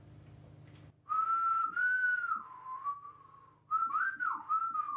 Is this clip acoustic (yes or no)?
yes